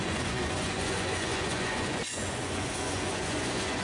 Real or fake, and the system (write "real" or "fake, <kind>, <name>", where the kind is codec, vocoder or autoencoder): fake, vocoder, Vocos